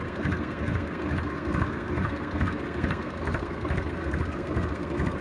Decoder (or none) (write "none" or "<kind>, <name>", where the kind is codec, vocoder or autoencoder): codec, SNAC